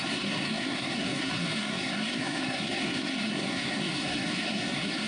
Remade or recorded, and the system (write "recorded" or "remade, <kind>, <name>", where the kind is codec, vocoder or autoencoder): remade, codec, SNAC